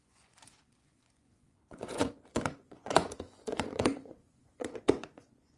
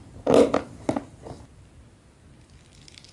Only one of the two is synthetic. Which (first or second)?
first